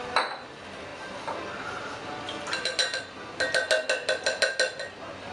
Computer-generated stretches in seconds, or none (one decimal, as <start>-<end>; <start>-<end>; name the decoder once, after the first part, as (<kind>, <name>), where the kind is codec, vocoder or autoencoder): none